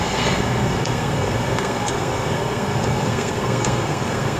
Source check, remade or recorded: remade